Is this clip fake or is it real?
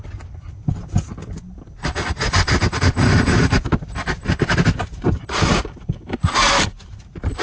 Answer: real